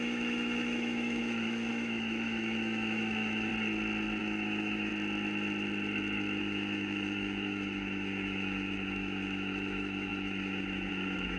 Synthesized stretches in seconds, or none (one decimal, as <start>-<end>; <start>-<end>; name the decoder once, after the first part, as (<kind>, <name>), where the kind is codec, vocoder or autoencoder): 0.0-3.5 (autoencoder, DAC-VAE); 4.2-4.9; 6.4-11.4